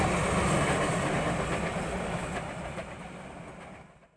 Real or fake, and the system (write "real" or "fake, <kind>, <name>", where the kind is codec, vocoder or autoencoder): real